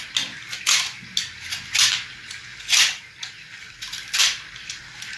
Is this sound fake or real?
real